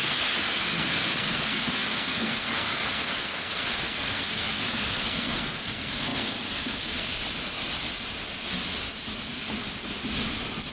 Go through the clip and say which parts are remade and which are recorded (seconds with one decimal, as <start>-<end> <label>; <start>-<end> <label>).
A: 0.0-7.2 remade; 7.2-10.7 recorded